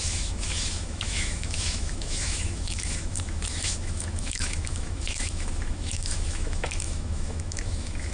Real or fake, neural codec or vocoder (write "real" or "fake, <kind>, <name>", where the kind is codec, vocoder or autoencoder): fake, autoencoder, DAC-VAE